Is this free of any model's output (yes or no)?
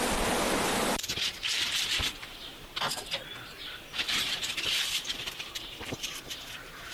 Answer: no